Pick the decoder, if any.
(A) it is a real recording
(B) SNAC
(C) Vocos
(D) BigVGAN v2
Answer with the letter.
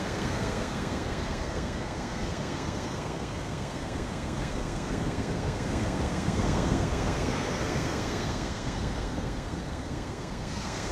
B